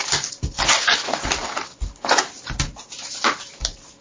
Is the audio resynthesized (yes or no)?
no